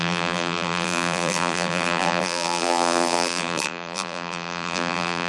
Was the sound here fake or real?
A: fake